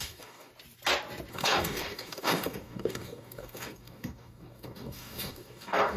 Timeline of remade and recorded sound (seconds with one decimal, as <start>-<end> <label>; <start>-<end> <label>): 0.0-0.5 remade; 0.5-1.3 recorded; 1.3-6.0 remade